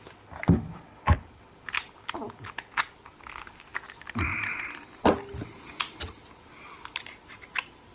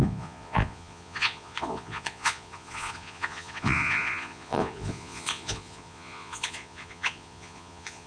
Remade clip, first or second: second